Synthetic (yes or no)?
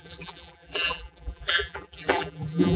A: yes